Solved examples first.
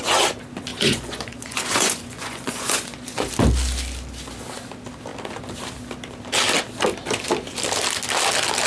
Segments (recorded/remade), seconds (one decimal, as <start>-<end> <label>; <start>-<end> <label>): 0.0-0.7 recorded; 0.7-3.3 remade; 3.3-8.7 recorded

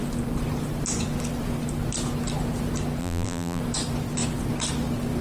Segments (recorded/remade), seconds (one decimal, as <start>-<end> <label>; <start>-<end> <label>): 0.0-3.0 recorded; 3.0-3.6 remade; 3.6-5.2 recorded

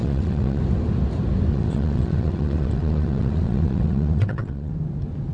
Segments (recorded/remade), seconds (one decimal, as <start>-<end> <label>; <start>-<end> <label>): 0.0-0.6 remade; 0.6-1.5 recorded; 1.5-4.7 remade; 4.7-5.3 recorded

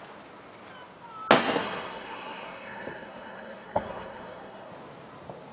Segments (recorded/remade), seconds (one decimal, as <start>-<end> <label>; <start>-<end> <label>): 0.0-1.4 recorded; 1.4-4.7 remade; 4.7-5.5 recorded

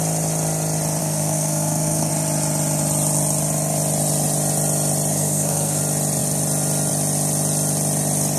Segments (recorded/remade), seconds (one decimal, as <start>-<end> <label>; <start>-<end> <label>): 0.0-1.0 recorded; 1.0-2.1 remade; 2.1-5.1 recorded; 5.1-5.8 remade; 5.8-8.4 recorded